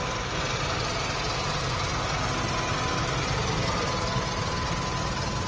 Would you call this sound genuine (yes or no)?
yes